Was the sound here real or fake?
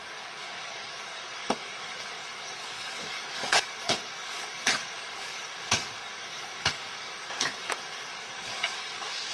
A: fake